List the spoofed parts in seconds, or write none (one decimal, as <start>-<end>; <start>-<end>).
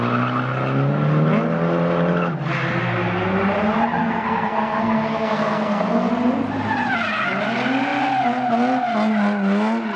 4.0-6.1